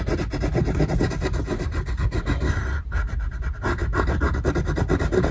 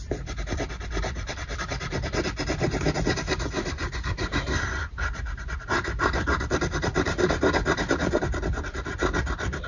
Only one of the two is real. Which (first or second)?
first